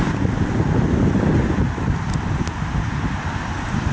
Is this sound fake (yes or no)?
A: yes